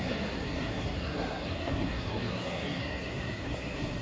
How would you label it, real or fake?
fake